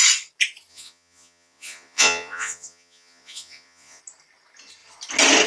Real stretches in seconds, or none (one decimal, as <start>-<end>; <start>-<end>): 0.0-0.7; 4.0-5.5

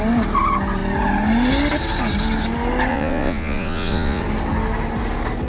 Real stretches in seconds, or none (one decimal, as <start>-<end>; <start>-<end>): 0.0-2.9; 4.2-5.5